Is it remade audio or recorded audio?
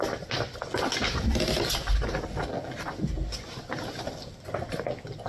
recorded